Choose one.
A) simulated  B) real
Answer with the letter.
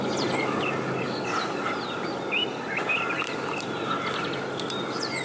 B